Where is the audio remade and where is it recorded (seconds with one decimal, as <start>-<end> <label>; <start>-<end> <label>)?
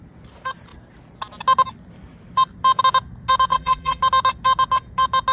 0.0-3.5 recorded; 3.5-4.0 remade; 4.0-5.3 recorded